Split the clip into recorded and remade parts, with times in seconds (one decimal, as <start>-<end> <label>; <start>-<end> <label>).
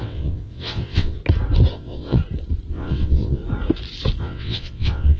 0.0-1.2 remade; 1.2-1.7 recorded; 1.7-2.2 remade; 2.2-2.7 recorded; 2.7-3.4 remade; 3.4-4.2 recorded; 4.2-5.2 remade